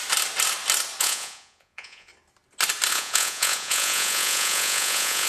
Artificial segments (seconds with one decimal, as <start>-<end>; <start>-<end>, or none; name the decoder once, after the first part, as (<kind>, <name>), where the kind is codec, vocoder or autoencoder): 1.0-2.1 (vocoder, Vocos); 2.9-5.3